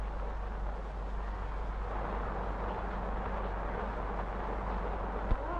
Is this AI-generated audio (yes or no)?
no